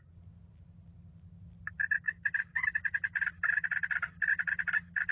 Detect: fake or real real